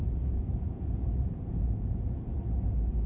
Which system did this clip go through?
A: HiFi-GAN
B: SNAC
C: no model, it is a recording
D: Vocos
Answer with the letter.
D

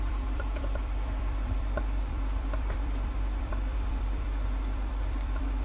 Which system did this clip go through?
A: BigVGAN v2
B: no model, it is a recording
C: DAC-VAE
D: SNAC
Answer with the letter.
A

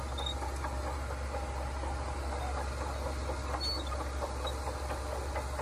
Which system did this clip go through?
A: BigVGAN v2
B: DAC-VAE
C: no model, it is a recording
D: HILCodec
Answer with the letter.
C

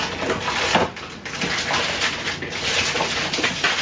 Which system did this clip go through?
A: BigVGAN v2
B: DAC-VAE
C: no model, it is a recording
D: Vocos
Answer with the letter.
C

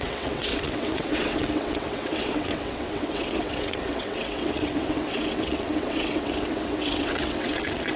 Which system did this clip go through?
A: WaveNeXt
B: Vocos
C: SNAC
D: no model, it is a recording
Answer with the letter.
A